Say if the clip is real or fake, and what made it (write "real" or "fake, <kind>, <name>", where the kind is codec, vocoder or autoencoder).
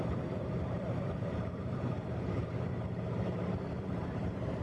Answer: fake, vocoder, BigVGAN v2